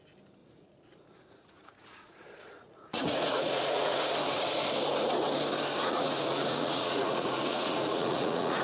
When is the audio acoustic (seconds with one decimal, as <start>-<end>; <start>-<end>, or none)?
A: 0.0-0.4; 4.1-5.8